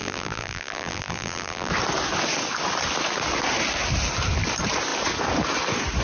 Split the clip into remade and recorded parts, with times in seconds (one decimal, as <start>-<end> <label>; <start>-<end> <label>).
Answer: 0.0-1.7 remade; 1.7-6.0 recorded

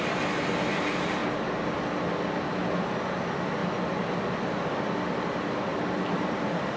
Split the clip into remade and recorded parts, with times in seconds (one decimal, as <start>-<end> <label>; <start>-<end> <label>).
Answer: 0.0-5.7 recorded; 5.7-6.8 remade